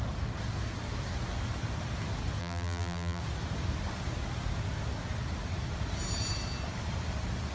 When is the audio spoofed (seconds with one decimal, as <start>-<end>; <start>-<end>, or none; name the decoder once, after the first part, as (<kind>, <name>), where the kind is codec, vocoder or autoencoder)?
2.4-3.2 (vocoder, BigVGAN v2)